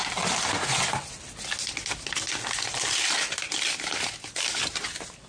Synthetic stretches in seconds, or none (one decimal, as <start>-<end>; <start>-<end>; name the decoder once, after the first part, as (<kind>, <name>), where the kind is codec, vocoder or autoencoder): none